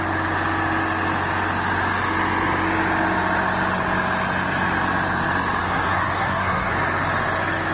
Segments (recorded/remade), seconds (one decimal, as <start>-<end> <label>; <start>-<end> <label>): 0.0-5.6 recorded; 5.6-6.7 remade; 6.7-7.7 recorded